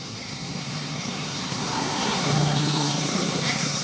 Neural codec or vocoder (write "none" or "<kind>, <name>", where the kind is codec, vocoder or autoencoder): codec, SNAC